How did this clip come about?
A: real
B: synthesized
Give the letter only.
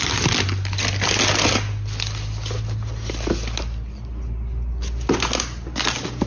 A